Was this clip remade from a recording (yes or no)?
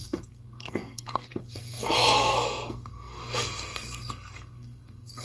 yes